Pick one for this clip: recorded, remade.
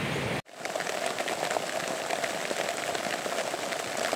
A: recorded